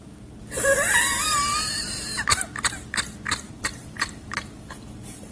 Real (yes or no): no